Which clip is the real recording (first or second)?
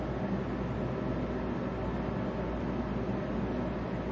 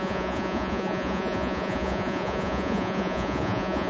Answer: first